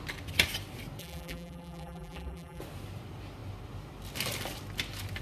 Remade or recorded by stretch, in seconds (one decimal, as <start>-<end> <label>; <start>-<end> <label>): 0.0-1.0 recorded; 1.0-2.6 remade; 2.6-5.2 recorded